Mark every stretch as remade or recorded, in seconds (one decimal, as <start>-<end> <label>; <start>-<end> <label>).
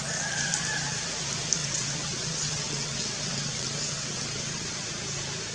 0.0-1.6 recorded; 1.6-4.9 remade; 4.9-5.5 recorded